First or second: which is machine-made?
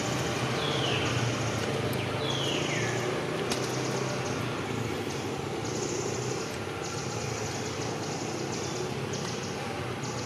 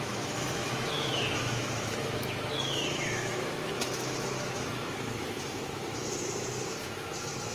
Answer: second